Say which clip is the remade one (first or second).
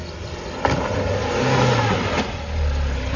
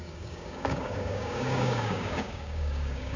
second